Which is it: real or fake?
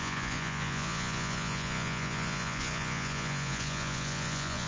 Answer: fake